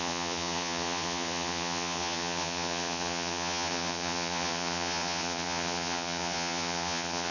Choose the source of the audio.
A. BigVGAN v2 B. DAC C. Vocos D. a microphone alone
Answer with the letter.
C